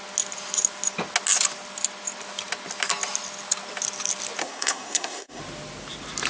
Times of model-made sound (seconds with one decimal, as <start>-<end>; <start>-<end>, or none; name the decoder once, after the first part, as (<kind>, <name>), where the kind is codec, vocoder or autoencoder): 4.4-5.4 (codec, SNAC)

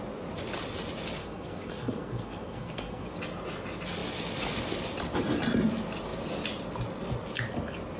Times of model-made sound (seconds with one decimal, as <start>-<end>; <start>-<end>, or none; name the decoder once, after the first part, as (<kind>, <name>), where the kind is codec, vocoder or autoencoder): 1.2-3.1 (codec, SNAC)

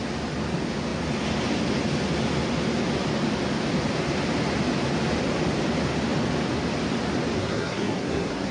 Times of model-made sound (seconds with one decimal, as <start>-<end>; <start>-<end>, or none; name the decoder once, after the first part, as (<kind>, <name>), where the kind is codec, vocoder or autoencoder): 7.4-8.5 (codec, SNAC)

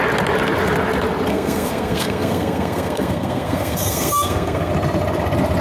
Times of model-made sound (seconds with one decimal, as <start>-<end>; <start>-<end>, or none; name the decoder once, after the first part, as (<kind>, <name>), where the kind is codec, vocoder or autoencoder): 1.3-4.7 (codec, SNAC)

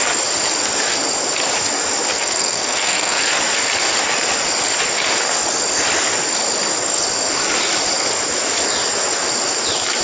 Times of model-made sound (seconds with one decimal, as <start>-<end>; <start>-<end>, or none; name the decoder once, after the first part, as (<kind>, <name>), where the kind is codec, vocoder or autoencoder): 2.1-3.3 (codec, SNAC)

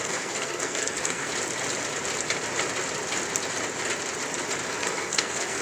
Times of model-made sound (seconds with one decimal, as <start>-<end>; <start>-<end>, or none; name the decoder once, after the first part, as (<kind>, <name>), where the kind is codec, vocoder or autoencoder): 0.0-1.3 (codec, SNAC); 4.7-5.6

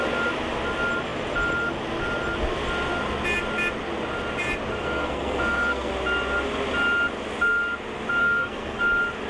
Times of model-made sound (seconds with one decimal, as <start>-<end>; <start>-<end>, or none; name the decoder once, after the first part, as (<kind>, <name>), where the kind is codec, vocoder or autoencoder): 4.8-5.9 (codec, SNAC); 8.2-8.8

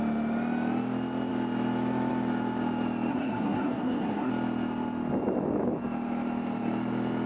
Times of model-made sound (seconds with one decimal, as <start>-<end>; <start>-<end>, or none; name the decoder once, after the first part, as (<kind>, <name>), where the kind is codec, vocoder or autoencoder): 3.1-4.3 (codec, SNAC)